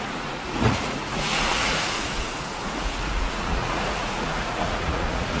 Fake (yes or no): yes